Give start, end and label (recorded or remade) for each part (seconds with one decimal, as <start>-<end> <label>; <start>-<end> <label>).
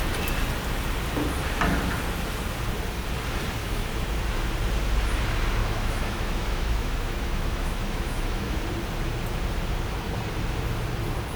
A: 0.0-3.6 recorded; 3.6-4.2 remade; 4.2-5.6 recorded; 5.6-8.6 remade; 8.6-11.4 recorded